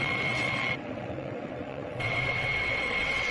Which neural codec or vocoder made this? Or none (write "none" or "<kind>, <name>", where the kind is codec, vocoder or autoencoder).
vocoder, WaveNeXt